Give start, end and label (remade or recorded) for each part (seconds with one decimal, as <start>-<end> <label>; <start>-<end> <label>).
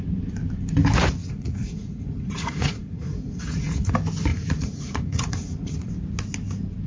0.0-1.2 recorded; 1.2-3.9 remade; 3.9-4.3 recorded; 4.3-5.9 remade; 5.9-6.9 recorded